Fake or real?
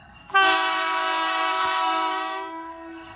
fake